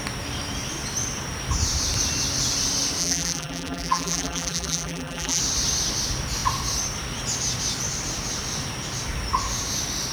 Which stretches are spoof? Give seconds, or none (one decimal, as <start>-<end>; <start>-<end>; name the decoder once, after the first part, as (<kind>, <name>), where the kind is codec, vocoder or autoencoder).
3.0-5.4 (vocoder, BigVGAN v2)